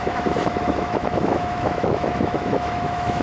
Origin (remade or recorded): remade